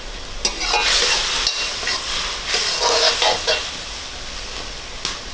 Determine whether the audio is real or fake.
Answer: real